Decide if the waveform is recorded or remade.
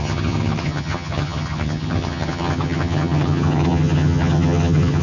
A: remade